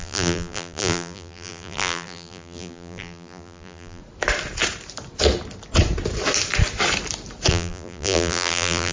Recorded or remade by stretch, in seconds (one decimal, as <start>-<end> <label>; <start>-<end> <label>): 0.0-4.0 remade; 4.0-7.5 recorded; 7.5-8.9 remade